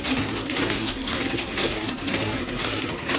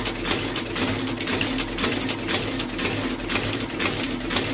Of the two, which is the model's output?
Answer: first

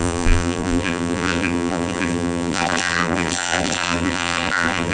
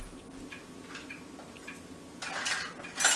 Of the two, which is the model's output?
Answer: first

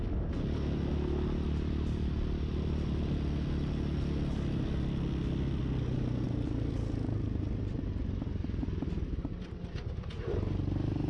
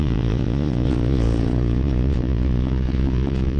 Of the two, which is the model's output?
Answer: second